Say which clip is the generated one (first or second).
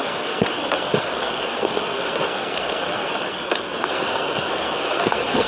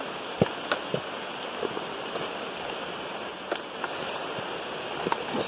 first